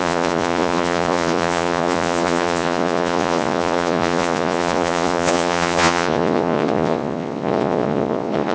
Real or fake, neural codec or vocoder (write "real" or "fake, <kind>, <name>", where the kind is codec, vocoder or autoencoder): fake, vocoder, Vocos